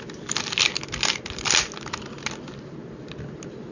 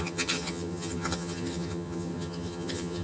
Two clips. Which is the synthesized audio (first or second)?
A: second